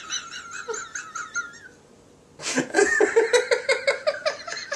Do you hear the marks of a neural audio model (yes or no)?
no